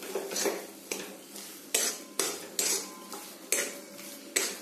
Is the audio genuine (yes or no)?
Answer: yes